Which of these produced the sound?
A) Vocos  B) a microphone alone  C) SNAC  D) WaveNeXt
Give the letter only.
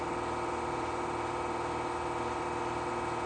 B